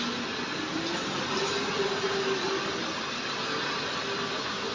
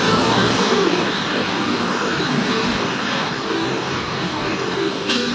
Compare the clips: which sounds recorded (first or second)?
first